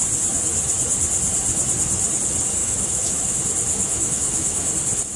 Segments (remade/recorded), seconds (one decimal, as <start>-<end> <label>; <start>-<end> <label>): 0.0-2.6 recorded; 2.6-3.2 remade; 3.2-3.7 recorded; 3.7-4.7 remade; 4.7-5.2 recorded